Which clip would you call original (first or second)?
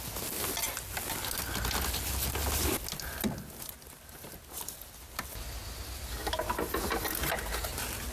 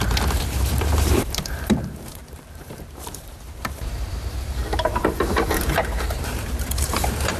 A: first